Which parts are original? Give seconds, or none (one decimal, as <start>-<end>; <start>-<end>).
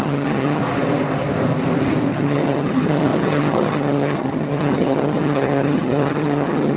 0.6-2.1